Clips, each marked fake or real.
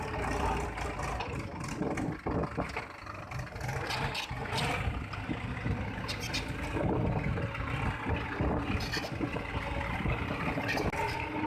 real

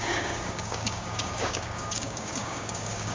fake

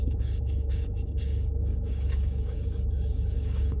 fake